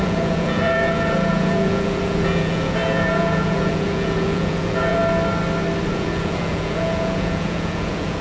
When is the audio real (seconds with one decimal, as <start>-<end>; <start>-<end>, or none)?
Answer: 5.0-5.9